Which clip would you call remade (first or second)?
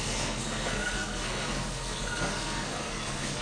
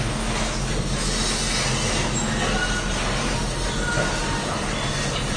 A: first